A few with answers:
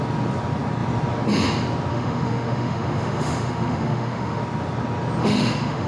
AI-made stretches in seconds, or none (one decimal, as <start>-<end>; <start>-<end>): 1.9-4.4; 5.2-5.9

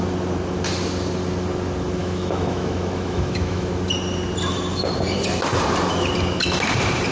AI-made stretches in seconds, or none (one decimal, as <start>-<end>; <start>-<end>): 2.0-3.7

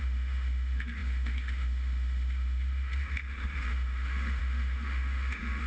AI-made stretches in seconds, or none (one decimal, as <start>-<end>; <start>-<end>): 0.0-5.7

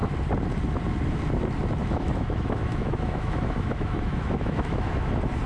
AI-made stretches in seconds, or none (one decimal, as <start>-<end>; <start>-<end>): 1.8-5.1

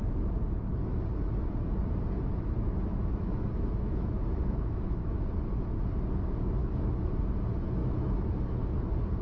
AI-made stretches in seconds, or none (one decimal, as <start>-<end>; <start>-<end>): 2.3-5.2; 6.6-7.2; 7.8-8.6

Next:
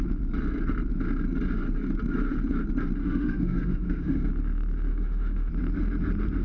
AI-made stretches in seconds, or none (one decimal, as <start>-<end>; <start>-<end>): 3.0-4.3; 4.9-5.5